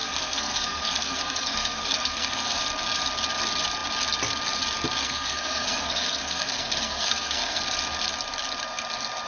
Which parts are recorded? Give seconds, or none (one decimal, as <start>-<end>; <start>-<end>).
2.6-5.0; 7.6-9.3